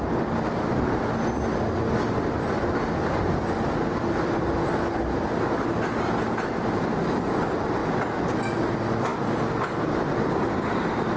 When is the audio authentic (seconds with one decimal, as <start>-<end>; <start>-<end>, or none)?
0.0-11.2